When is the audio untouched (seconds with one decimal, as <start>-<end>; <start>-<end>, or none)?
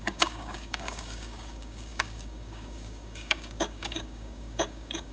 none